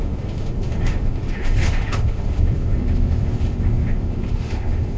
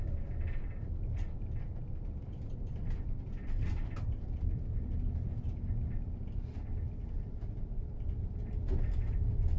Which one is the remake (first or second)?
first